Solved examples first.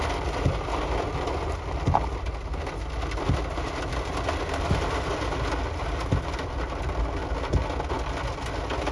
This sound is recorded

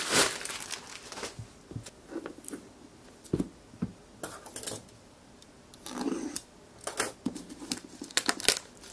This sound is recorded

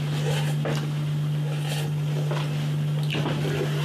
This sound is recorded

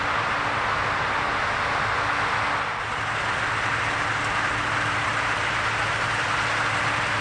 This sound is recorded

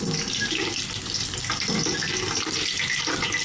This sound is recorded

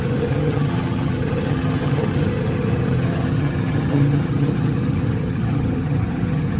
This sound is remade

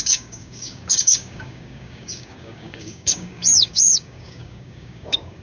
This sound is remade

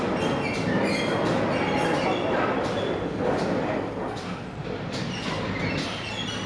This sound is recorded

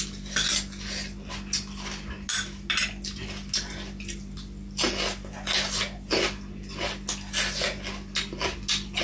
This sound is recorded